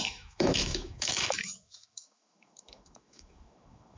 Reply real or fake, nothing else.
fake